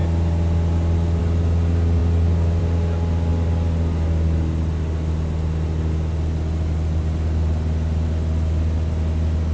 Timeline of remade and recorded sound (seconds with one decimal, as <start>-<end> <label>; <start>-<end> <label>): 0.0-9.5 recorded